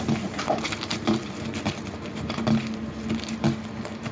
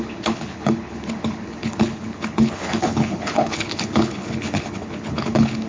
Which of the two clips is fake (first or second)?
second